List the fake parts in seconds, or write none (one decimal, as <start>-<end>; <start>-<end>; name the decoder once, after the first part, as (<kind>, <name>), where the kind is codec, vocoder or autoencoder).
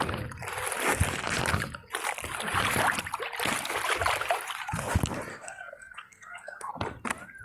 5.3-6.7 (codec, SNAC)